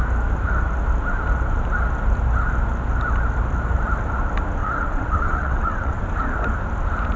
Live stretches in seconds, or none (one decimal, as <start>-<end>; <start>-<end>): 0.0-4.6; 6.0-7.2